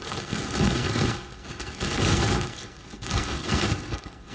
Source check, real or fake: fake